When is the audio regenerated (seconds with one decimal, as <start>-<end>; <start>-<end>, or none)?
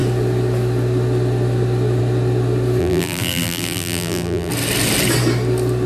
2.8-4.5